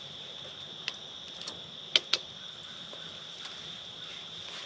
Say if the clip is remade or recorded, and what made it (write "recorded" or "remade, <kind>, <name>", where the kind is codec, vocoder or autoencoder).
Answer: recorded